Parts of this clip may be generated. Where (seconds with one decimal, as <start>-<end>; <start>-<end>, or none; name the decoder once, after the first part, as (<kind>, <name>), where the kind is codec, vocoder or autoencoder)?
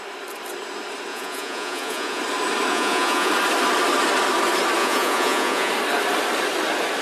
1.1-2.2 (vocoder, Vocos); 2.7-3.3; 4.8-5.7